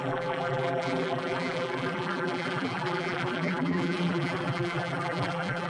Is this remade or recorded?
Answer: remade